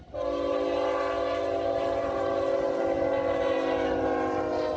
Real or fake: real